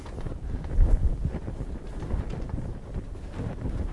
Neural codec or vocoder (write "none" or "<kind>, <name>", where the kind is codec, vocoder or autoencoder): none